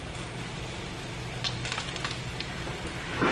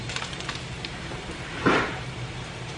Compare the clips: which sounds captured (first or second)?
first